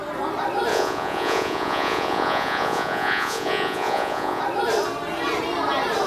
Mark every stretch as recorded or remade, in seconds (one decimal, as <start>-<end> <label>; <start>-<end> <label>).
0.0-0.7 recorded; 0.7-4.4 remade; 4.4-6.1 recorded